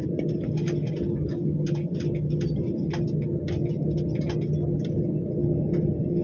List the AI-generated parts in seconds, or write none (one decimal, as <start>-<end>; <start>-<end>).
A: none